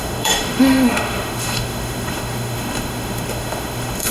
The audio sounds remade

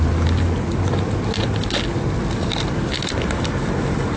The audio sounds recorded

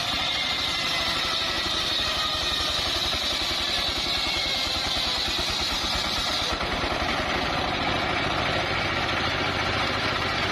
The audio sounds remade